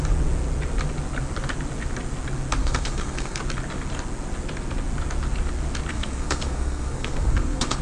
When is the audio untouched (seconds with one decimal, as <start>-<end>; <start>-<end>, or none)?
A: 0.0-2.6; 3.4-5.9